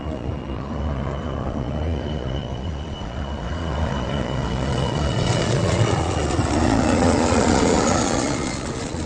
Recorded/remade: remade